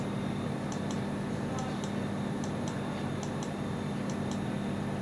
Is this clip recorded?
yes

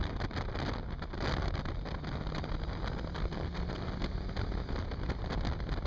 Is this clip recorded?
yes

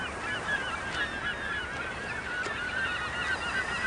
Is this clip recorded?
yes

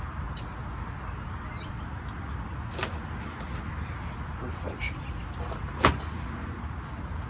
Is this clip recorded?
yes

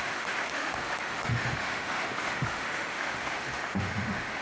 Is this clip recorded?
no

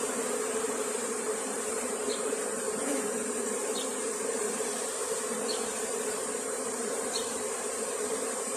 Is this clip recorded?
no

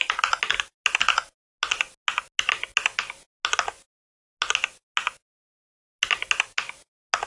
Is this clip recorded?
yes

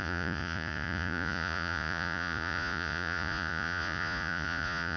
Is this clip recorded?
no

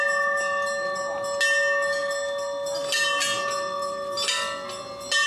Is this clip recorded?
yes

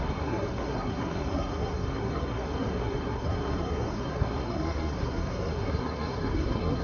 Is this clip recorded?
no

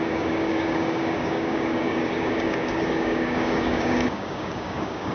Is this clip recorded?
no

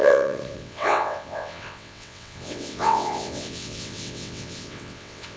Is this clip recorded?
no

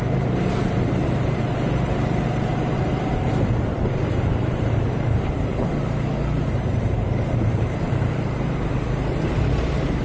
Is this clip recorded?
no